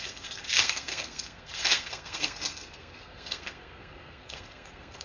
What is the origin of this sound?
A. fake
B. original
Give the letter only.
A